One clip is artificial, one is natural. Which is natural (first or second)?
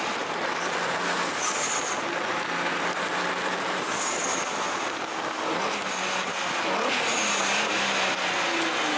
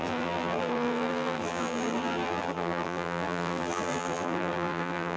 first